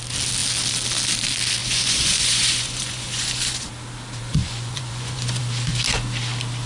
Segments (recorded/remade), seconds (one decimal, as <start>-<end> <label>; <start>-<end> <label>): 0.0-1.6 recorded; 1.6-3.7 remade; 3.7-4.2 recorded; 4.2-5.4 remade; 5.4-6.7 recorded